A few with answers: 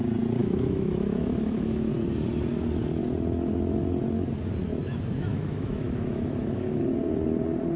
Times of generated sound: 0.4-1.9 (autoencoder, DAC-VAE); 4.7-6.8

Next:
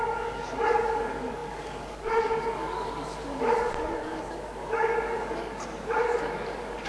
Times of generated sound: 0.0-6.9 (codec, DAC)

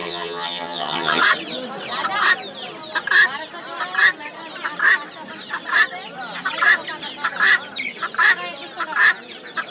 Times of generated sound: 0.0-1.2 (vocoder, HiFi-GAN)

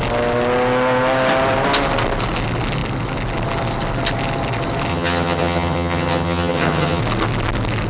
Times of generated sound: 4.9-7.0 (vocoder, HiFi-GAN)

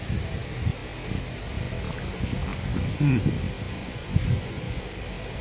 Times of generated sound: 3.8-4.8 (vocoder, Vocos)

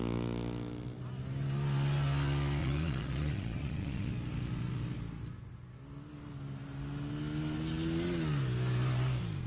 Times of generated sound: 2.6-4.1 (vocoder, Vocos)

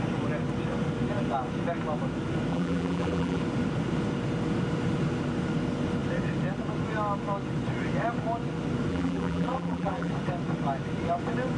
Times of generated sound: 2.5-3.4 (vocoder, BigVGAN v2); 8.9-10.1

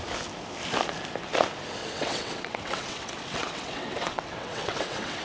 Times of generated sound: 1.8-5.2 (vocoder, WaveNeXt)